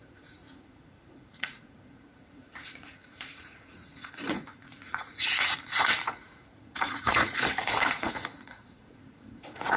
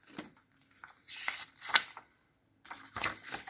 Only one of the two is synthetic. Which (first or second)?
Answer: first